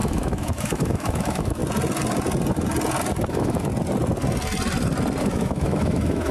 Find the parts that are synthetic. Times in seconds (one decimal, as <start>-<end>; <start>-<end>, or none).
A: 0.0-1.6; 3.3-3.7; 5.2-6.3